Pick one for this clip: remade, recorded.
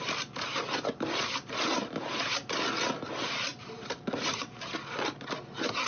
recorded